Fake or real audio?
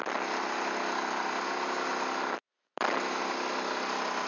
real